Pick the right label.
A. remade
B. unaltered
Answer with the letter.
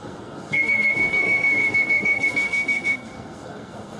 A